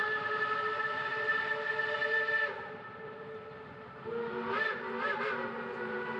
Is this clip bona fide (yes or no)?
no